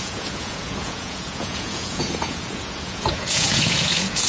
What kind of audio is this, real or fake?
fake